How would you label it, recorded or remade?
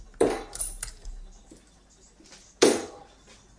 recorded